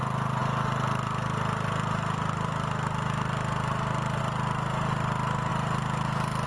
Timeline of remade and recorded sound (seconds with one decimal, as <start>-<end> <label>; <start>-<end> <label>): 0.0-6.5 recorded